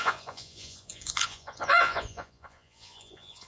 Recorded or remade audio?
remade